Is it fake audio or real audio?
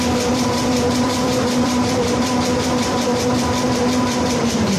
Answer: fake